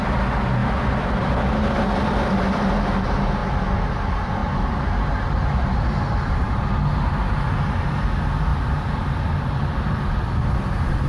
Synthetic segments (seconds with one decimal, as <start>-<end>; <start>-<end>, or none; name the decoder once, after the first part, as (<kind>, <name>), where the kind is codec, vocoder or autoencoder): 0.6-1.3 (vocoder, BigVGAN v2)